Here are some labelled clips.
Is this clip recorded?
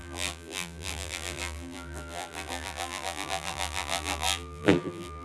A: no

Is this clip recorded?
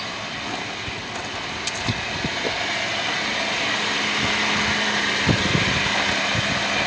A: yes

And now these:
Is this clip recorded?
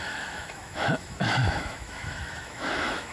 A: no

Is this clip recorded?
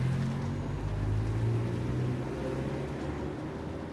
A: yes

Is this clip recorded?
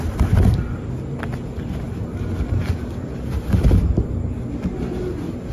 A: yes